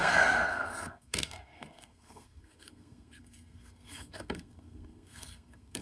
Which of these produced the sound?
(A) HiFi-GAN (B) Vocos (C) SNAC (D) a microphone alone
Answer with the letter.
C